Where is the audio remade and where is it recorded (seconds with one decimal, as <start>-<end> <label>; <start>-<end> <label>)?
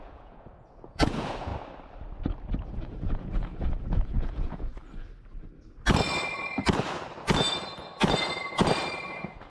0.0-1.5 remade; 1.5-2.7 recorded; 2.7-4.8 remade; 4.8-9.1 recorded; 9.1-9.5 remade